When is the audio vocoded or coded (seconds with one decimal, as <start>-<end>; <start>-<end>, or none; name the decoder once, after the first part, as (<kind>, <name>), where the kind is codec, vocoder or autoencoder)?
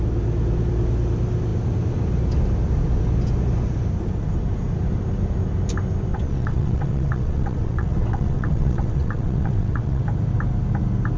6.1-10.0 (vocoder, WaveNeXt)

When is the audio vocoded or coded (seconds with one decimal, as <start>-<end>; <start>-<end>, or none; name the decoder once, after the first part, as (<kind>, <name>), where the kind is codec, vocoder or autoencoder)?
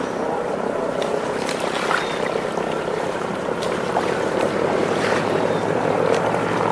0.0-0.8 (vocoder, BigVGAN v2); 2.8-6.7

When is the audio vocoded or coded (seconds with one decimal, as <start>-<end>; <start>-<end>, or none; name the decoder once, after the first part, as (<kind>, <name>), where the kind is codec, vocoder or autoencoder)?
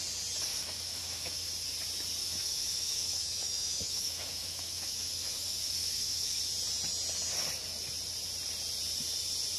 0.5-1.5 (autoencoder, DAC-VAE); 2.2-6.4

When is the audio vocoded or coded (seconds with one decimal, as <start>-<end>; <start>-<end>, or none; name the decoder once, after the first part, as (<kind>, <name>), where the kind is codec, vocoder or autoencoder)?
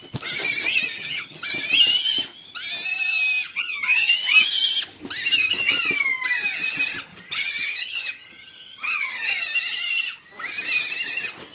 0.9-1.4 (vocoder, HiFi-GAN); 3.5-4.1; 7.1-9.4